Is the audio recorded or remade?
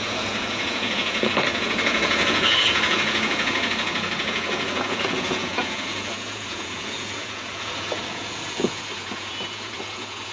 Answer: remade